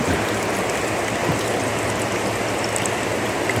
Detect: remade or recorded recorded